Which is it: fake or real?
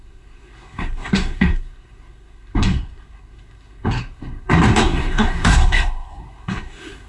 fake